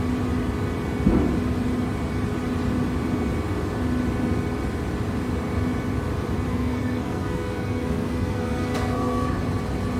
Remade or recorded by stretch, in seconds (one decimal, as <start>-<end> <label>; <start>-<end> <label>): 0.0-6.5 recorded; 6.5-9.4 remade; 9.4-10.0 recorded